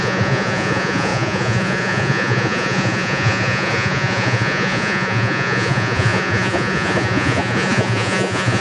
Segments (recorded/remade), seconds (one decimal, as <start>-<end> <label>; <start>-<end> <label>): 0.0-8.6 remade